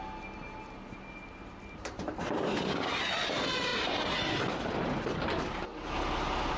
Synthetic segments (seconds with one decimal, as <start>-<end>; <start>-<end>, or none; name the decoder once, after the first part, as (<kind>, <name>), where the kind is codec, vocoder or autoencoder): 3.7-4.6 (vocoder, BigVGAN v2)

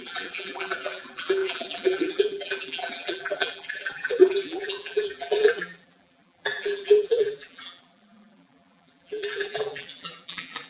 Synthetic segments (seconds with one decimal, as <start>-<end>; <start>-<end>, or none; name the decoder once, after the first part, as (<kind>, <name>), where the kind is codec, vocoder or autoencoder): 0.0-10.7 (vocoder, BigVGAN v2)

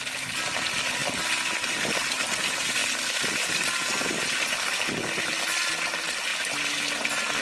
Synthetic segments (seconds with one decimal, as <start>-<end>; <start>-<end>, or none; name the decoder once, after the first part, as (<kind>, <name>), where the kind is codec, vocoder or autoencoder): none

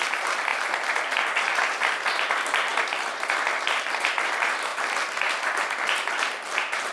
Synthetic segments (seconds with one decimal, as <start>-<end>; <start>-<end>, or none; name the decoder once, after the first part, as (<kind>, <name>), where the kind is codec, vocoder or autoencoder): 0.0-0.5 (vocoder, BigVGAN v2); 1.4-2.7; 3.2-6.9

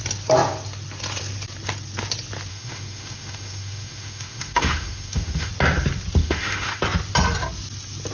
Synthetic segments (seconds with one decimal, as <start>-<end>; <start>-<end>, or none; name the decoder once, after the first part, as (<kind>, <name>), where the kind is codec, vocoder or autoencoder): 2.5-5.5 (autoencoder, DAC-VAE); 6.2-6.8

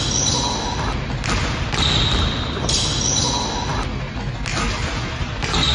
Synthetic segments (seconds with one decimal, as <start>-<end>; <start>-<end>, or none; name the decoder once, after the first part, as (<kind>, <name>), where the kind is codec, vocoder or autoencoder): none

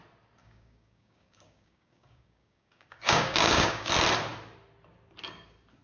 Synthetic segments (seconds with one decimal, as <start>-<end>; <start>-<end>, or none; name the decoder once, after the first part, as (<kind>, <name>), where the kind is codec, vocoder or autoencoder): 0.4-3.9 (codec, DAC)

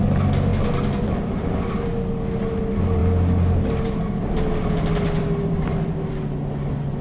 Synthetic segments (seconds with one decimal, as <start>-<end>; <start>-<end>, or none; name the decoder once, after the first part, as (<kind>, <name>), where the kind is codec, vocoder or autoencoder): none